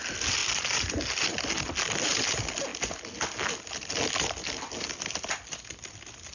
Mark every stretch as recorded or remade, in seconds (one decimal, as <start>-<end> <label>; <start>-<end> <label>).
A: 0.0-6.3 recorded

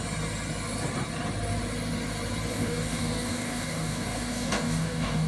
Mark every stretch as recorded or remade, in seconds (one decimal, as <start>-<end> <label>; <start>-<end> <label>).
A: 0.0-2.5 recorded; 2.5-5.3 remade